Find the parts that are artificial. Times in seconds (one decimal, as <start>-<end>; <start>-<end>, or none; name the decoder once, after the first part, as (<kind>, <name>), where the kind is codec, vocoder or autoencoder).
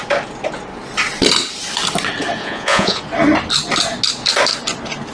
2.4-3.0 (vocoder, Vocos)